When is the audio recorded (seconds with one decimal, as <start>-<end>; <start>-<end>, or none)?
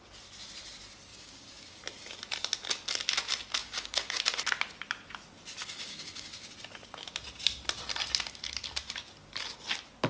0.0-1.1; 1.8-3.6; 4.2-5.6; 6.5-10.1